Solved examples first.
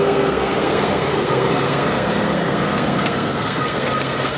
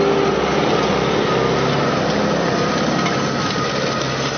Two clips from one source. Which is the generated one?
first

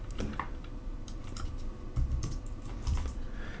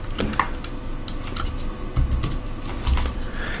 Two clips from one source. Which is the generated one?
first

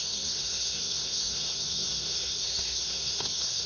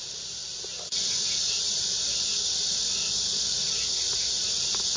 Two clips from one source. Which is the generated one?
first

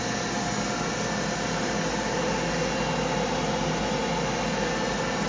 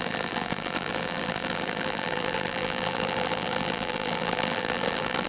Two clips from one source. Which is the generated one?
second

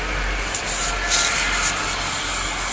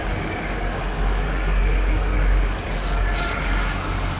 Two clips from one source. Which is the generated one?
second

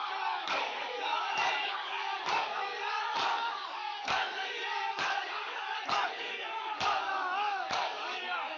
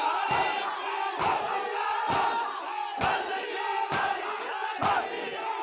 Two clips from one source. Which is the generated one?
first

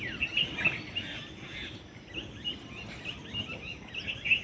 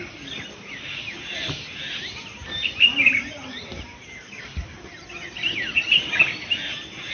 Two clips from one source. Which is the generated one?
second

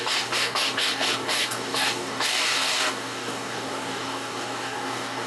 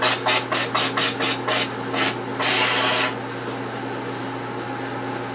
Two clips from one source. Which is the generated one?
first